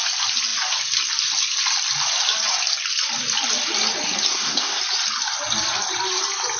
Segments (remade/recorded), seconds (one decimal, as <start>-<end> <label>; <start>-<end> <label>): 0.0-4.3 recorded; 4.3-4.8 remade; 4.8-6.6 recorded